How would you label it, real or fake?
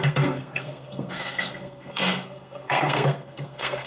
fake